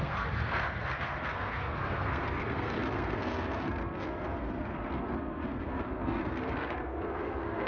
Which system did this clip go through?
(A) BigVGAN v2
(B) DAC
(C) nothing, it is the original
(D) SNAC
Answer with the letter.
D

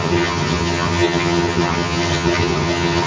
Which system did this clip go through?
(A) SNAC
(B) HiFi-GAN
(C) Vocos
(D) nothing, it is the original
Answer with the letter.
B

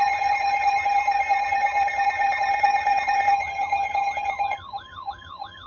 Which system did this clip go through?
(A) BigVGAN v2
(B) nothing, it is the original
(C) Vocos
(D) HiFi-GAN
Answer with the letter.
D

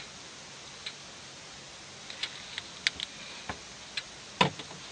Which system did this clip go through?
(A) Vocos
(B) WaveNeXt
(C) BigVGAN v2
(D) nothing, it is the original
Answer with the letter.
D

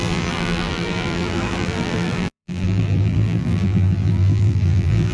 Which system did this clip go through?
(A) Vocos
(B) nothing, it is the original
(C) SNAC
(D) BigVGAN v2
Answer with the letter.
D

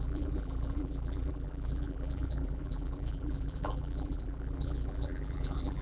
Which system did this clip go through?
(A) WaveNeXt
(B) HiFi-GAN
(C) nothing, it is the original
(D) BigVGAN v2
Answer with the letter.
D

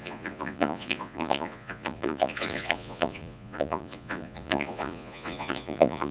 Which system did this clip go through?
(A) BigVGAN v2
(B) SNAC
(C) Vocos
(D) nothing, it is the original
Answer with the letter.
C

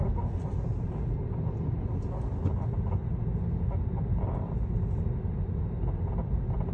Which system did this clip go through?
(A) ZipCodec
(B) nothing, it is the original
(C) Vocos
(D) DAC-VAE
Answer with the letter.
B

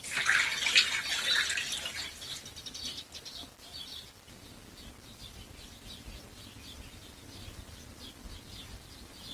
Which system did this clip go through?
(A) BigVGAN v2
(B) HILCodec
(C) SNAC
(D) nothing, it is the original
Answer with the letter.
D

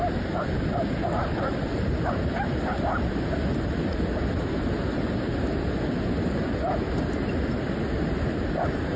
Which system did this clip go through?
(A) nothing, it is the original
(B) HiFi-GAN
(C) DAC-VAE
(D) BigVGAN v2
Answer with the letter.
A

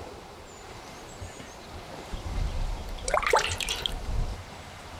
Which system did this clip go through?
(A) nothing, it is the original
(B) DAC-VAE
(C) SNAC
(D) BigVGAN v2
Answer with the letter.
D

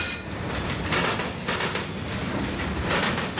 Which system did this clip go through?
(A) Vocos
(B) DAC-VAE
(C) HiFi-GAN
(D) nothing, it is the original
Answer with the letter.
D